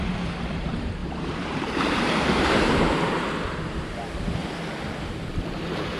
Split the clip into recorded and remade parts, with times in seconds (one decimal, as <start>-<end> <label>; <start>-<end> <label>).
0.0-4.4 remade; 4.4-5.5 recorded; 5.5-6.0 remade